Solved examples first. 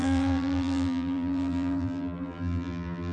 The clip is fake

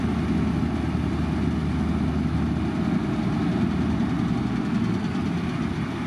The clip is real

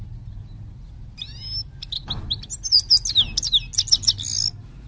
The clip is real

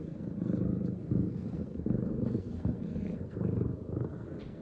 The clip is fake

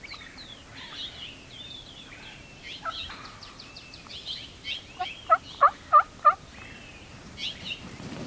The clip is fake